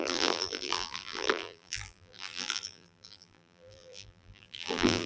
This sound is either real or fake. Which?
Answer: fake